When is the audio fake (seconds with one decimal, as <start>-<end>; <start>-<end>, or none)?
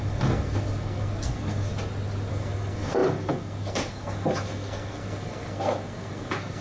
0.0-1.7; 2.3-6.6